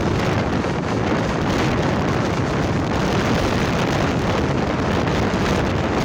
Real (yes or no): yes